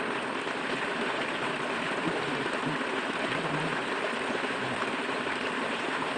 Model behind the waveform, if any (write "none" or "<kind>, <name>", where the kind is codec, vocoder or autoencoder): none